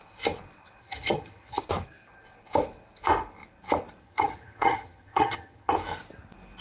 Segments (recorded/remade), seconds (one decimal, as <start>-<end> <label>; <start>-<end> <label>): 0.0-0.8 recorded; 0.8-1.6 remade; 1.6-4.0 recorded; 4.0-5.7 remade; 5.7-6.6 recorded

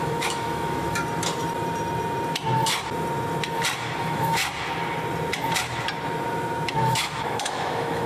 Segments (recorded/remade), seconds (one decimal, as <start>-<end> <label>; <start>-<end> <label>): 0.0-1.0 remade; 1.0-4.0 recorded; 4.0-4.4 remade; 4.4-6.7 recorded; 6.7-8.1 remade